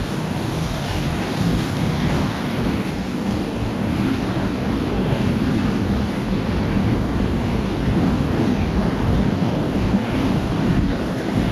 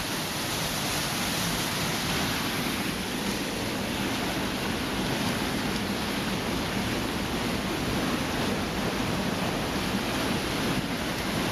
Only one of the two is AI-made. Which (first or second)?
first